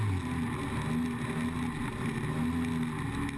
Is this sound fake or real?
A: real